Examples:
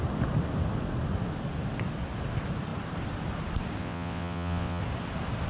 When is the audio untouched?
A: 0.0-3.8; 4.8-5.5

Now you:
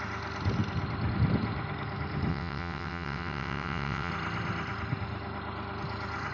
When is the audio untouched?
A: 0.0-2.3; 4.1-6.3

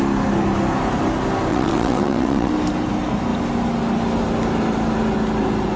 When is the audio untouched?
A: 0.0-1.5; 2.5-5.8